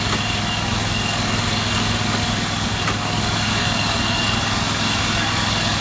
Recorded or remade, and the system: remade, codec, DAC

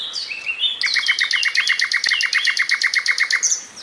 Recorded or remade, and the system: recorded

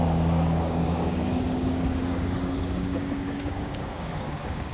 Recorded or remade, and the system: remade, codec, DAC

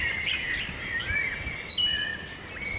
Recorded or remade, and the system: recorded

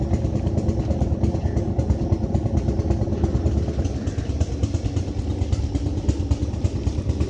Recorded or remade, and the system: recorded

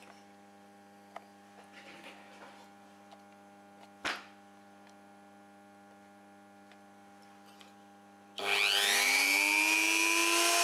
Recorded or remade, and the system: recorded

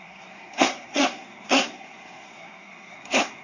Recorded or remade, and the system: remade, codec, SNAC